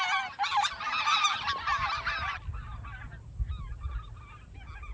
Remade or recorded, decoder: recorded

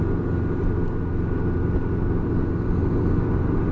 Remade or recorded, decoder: recorded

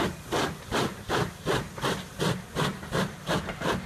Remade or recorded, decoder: recorded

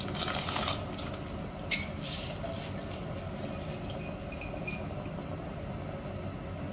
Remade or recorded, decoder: recorded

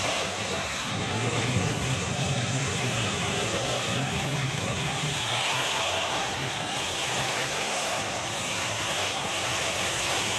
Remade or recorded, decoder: remade, codec, SNAC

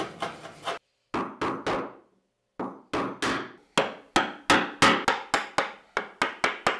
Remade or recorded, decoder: recorded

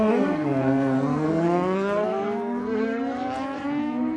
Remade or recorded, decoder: remade, codec, SNAC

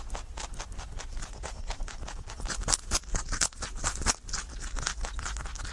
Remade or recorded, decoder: recorded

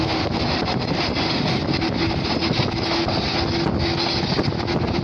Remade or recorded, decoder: recorded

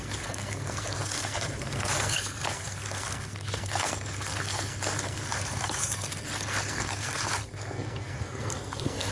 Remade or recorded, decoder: remade, codec, SNAC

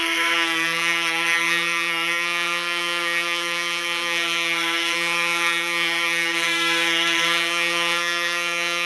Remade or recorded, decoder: remade, codec, SNAC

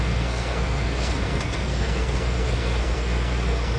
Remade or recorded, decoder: remade, codec, SNAC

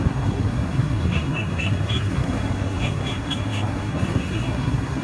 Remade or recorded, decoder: remade, codec, SNAC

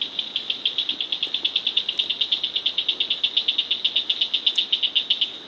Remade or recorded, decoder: recorded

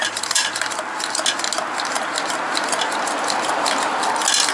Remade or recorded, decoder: recorded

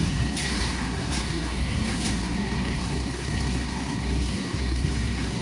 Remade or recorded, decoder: remade, codec, SNAC